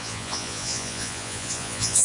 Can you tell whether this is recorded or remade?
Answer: remade